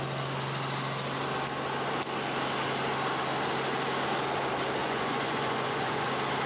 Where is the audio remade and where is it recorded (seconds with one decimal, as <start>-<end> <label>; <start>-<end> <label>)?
0.0-4.8 recorded; 4.8-6.1 remade; 6.1-6.5 recorded